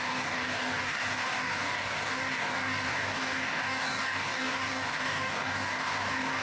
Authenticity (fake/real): fake